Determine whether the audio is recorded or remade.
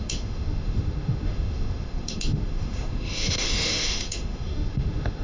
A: remade